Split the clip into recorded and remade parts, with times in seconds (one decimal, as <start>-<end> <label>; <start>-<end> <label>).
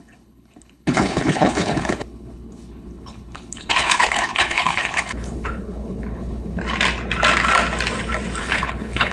0.0-6.6 remade; 6.6-8.4 recorded; 8.4-9.1 remade